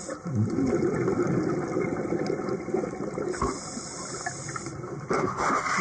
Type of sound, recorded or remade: recorded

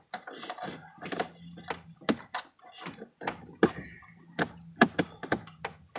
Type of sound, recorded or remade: recorded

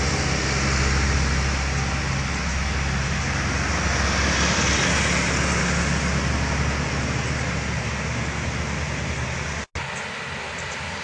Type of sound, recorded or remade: recorded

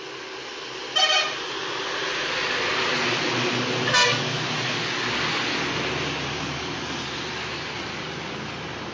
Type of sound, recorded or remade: recorded